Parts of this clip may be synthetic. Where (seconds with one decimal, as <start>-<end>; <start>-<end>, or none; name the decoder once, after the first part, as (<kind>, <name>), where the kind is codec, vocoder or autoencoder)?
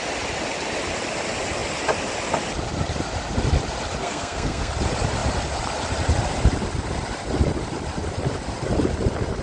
4.0-4.7 (codec, SNAC)